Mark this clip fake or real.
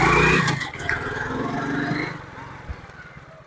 real